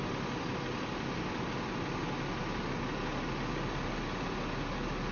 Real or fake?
real